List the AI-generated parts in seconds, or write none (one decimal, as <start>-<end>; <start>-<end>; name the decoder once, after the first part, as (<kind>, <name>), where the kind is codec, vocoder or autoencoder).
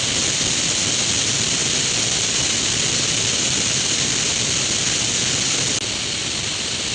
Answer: none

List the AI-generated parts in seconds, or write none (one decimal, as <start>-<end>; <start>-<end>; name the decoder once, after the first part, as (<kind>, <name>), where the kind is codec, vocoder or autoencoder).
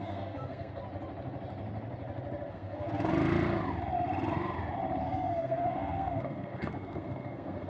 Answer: 0.0-0.8 (codec, SNAC); 2.5-3.1; 5.0-7.7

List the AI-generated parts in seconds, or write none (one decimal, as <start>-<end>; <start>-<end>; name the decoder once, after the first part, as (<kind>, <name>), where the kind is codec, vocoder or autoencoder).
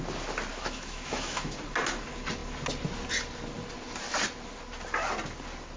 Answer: 0.5-1.6 (autoencoder, DAC-VAE)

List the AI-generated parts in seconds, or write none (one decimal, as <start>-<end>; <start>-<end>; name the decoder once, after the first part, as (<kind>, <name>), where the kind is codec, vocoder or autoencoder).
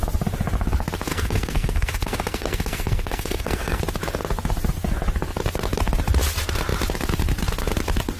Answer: 1.1-3.8 (codec, SNAC)